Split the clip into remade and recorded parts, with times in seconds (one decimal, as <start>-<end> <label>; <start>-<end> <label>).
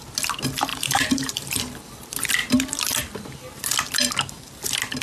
0.0-0.7 recorded; 0.7-1.6 remade; 1.6-5.0 recorded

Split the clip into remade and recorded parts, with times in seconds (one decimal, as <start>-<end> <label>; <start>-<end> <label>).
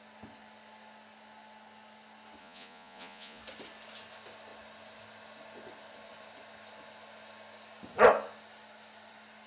0.0-2.4 recorded; 2.4-3.4 remade; 3.4-9.5 recorded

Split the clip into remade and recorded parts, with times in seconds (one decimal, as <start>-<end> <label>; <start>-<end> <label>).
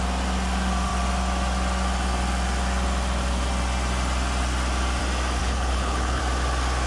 0.0-5.4 recorded; 5.4-6.2 remade; 6.2-6.9 recorded